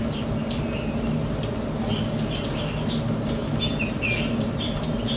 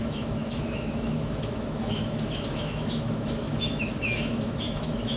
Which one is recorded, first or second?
first